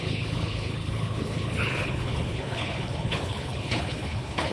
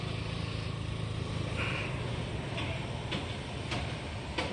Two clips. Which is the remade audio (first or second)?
first